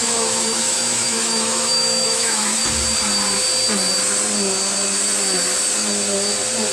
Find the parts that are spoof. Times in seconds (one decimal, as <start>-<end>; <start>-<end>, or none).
0.0-2.6